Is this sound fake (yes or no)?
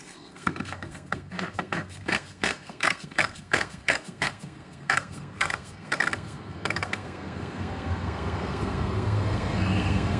yes